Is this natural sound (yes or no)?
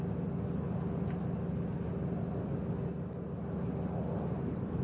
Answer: yes